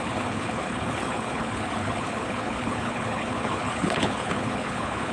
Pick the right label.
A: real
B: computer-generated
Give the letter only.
B